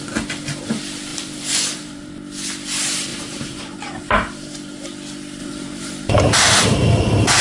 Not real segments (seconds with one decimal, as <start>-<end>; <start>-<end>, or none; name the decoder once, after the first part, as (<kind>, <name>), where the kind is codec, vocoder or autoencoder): 1.1-2.1 (vocoder, BigVGAN v2); 3.1-4.6; 5.4-6.1